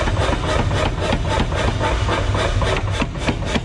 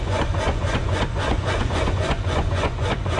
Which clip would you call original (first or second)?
first